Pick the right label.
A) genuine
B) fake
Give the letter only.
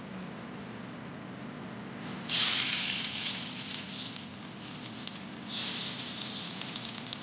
A